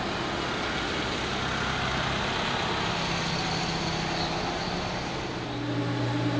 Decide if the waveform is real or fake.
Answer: real